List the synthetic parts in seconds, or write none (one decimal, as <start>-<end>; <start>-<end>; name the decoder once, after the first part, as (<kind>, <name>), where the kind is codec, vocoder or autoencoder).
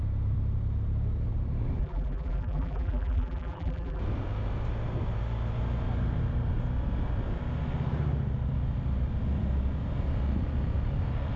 1.8-4.0 (vocoder, BigVGAN v2)